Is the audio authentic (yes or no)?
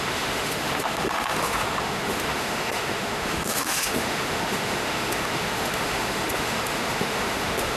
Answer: no